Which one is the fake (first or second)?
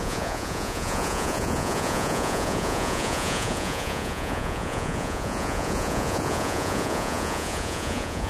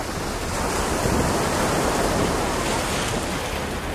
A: first